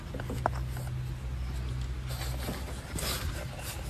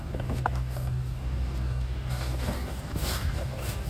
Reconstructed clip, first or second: second